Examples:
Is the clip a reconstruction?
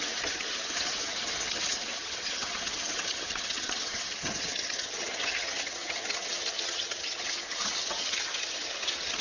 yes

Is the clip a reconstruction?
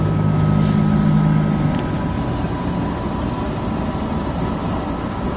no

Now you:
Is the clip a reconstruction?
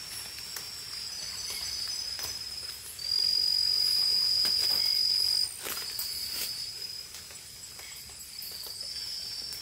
no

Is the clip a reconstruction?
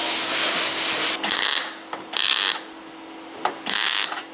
no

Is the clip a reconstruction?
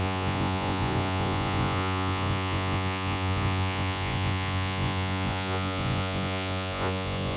yes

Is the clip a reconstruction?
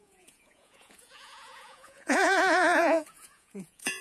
yes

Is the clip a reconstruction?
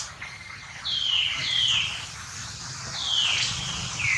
no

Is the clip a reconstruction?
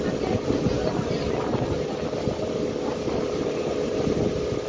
no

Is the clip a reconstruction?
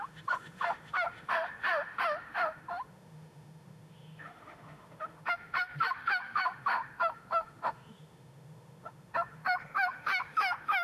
yes